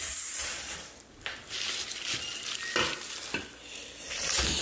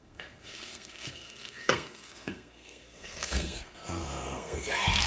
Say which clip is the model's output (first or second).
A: second